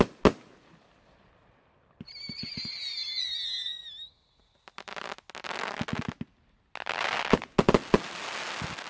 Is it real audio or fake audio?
real